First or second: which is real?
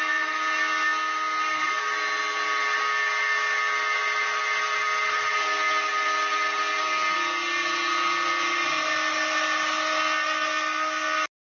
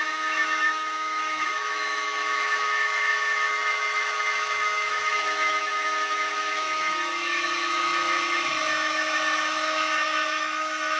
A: first